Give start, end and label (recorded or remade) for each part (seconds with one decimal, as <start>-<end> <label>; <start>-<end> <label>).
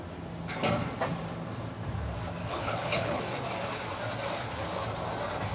0.0-2.4 recorded; 2.4-3.2 remade; 3.2-5.5 recorded